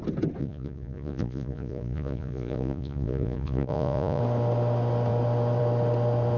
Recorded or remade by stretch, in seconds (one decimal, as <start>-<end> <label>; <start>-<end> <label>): 0.0-0.4 recorded; 0.4-4.2 remade; 4.2-6.4 recorded